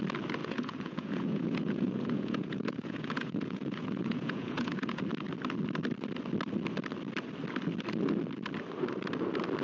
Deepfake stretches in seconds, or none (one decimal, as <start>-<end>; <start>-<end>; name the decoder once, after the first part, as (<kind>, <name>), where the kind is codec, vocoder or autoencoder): 0.4-5.0 (vocoder, Vocos)